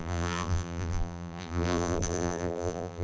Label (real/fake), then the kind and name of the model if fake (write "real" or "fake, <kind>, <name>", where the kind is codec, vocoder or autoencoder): fake, vocoder, BigVGAN v2